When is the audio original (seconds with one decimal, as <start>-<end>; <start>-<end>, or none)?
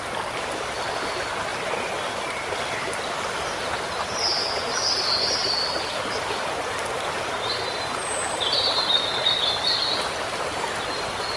0.0-11.4